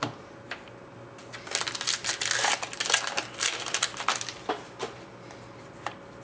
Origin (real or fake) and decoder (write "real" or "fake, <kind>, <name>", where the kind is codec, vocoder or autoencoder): real